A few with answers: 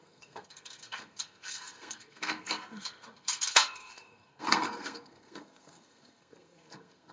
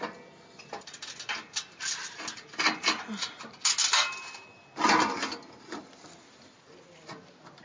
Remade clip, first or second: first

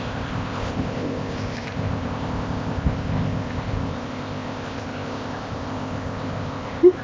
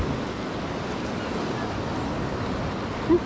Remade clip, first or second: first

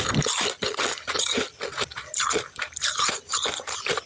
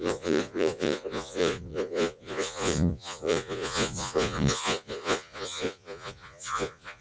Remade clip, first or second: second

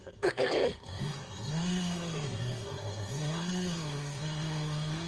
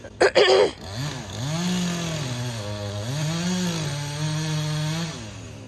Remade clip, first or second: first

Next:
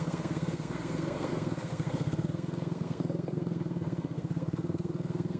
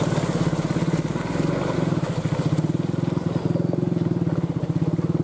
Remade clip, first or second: first